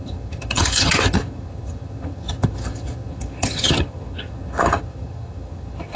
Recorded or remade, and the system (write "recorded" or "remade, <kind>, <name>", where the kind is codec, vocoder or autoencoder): remade, vocoder, HiFi-GAN